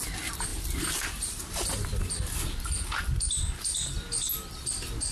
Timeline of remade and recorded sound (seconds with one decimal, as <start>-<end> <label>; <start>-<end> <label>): 0.0-5.1 recorded